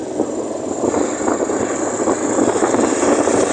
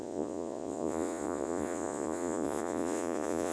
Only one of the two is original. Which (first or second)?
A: first